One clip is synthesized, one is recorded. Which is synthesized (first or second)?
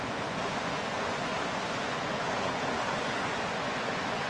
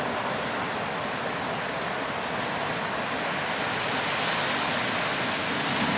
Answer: first